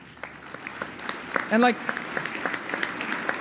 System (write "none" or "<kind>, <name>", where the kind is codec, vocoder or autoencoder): none